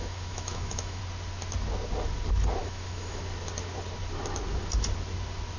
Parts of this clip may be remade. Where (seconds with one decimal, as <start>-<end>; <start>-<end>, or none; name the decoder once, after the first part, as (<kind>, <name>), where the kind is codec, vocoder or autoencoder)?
0.0-1.0 (autoencoder, DAC-VAE); 2.6-3.2

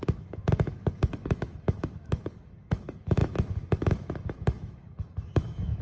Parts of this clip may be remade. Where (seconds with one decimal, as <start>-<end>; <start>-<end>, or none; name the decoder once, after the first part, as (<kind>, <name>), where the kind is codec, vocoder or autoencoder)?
0.0-5.8 (autoencoder, DAC-VAE)

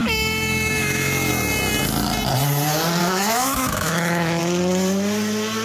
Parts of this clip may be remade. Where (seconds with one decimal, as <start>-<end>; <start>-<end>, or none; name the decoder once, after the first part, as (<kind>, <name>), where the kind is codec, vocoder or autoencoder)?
0.0-1.3 (autoencoder, DAC-VAE); 3.0-4.4

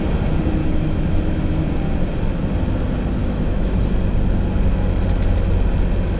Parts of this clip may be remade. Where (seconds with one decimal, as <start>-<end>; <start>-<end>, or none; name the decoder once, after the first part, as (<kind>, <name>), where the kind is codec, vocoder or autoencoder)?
0.6-1.7 (autoencoder, DAC-VAE); 3.2-3.8

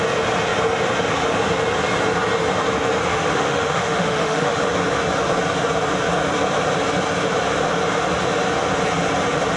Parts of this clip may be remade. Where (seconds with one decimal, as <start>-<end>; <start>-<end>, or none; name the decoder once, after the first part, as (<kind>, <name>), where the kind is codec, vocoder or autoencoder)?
3.1-4.6 (autoencoder, DAC-VAE)

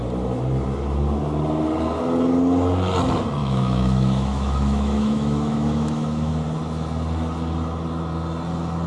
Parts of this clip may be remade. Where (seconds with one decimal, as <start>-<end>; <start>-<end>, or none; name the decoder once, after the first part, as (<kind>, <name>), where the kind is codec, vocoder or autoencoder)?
3.4-6.3 (autoencoder, DAC-VAE)